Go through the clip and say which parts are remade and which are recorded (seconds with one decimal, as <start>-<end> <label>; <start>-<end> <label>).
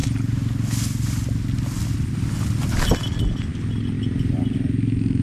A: 0.0-5.2 recorded